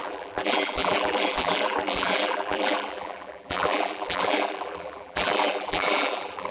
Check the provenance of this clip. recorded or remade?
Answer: remade